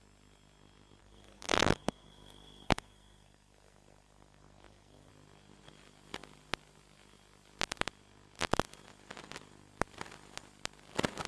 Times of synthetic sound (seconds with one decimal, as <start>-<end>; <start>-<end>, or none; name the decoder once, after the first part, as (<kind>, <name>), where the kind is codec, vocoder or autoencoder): 1.0-5.1 (codec, SNAC)